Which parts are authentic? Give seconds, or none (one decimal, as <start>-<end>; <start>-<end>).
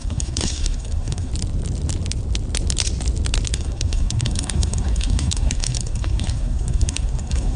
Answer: 1.3-3.5